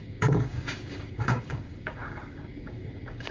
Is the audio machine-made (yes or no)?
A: yes